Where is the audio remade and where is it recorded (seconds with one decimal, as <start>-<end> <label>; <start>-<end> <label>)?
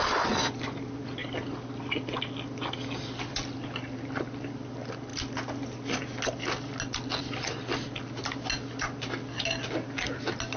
0.0-10.6 recorded